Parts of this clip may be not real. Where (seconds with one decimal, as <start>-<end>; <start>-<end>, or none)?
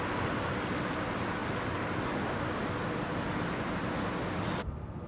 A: none